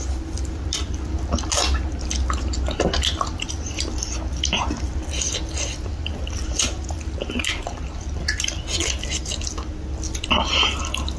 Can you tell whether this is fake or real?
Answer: real